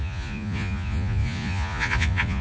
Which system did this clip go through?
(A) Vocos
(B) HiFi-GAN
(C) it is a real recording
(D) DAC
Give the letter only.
A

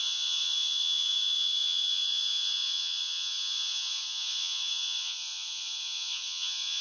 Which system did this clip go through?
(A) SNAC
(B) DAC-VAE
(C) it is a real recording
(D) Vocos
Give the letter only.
D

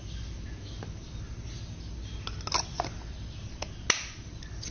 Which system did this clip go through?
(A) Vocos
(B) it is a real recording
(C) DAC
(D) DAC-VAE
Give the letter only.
B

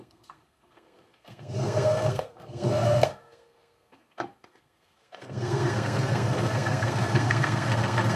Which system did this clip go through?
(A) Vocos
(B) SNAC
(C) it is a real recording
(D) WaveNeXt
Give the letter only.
B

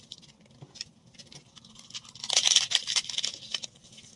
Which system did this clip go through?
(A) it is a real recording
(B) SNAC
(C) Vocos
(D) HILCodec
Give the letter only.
A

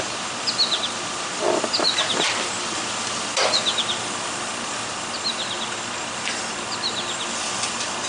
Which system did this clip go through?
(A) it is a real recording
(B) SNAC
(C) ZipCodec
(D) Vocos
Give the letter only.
A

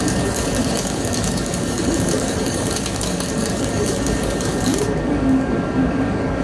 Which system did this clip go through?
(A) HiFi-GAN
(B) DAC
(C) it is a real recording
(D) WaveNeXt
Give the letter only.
B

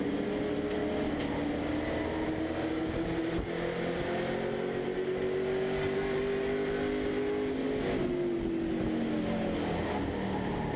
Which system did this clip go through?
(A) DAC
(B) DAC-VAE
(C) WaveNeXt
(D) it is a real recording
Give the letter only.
D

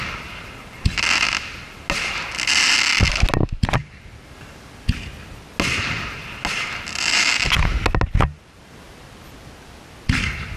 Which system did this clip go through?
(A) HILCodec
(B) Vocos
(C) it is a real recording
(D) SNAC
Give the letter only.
C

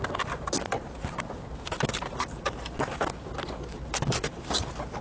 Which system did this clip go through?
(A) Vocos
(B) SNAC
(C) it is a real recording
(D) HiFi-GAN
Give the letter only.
C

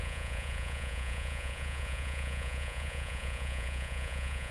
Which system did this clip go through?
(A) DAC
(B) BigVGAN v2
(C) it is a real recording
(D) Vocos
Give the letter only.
D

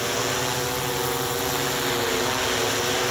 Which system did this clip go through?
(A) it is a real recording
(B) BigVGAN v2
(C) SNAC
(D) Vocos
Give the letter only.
A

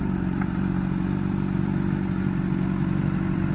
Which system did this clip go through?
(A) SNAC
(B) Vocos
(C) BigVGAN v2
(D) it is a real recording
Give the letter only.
D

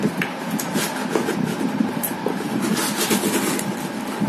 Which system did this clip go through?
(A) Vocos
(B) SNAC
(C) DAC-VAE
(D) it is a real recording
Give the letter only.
D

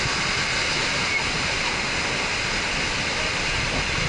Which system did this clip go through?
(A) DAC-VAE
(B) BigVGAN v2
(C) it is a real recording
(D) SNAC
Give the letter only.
C